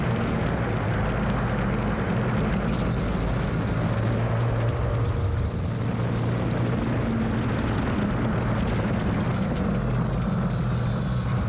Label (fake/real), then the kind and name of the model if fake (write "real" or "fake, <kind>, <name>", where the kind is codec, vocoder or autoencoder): real